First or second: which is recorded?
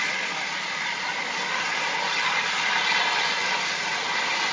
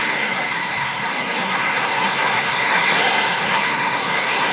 first